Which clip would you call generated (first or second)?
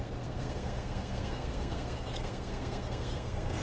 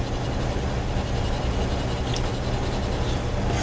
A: first